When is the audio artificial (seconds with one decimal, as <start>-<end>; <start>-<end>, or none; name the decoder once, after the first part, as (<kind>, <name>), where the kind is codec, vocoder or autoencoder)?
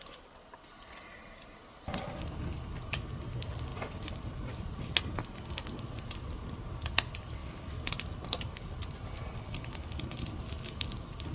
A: none